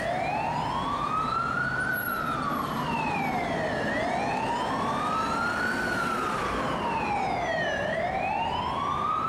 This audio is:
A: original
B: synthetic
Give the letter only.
A